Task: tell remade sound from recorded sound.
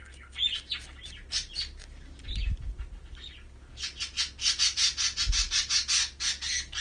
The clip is recorded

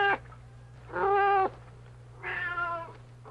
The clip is recorded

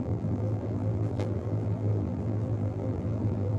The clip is remade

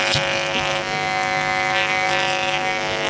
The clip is recorded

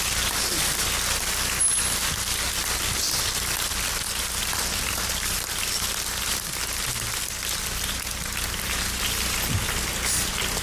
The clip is recorded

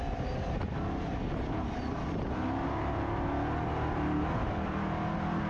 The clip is recorded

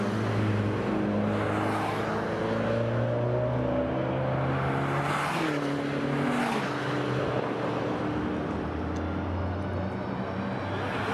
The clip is recorded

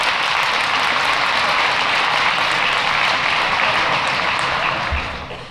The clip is recorded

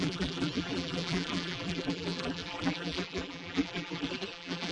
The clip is remade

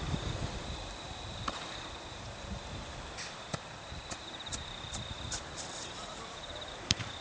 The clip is remade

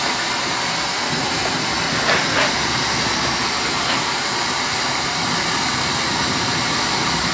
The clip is remade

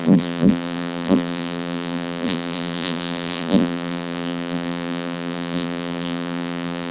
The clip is remade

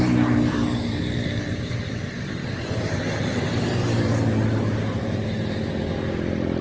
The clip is remade